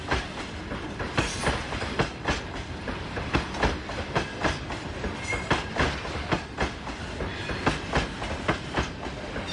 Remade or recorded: recorded